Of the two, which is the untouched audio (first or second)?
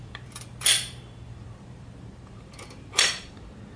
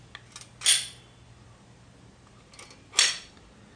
second